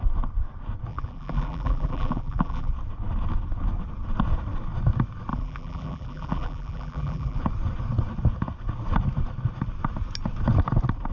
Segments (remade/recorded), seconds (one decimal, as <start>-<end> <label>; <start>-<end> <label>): 0.0-0.9 recorded; 0.9-2.7 remade; 2.7-5.3 recorded; 5.3-7.4 remade; 7.4-11.1 recorded